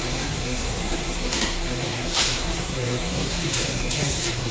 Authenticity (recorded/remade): remade